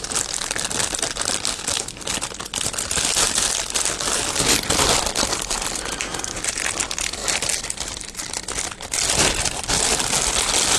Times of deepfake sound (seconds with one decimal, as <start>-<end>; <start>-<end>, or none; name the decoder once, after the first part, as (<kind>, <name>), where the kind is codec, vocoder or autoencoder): none